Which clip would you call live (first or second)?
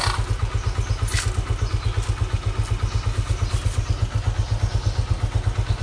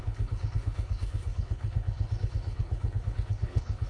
first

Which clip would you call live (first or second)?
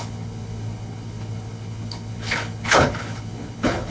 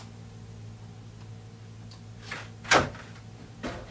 second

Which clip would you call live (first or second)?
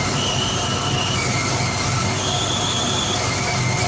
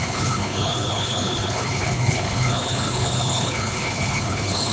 first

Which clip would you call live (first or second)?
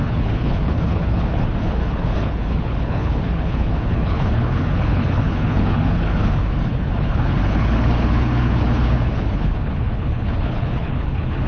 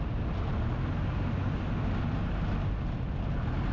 second